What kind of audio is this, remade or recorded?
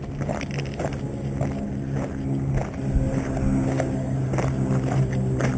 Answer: recorded